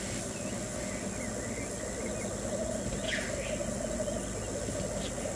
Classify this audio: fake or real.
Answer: real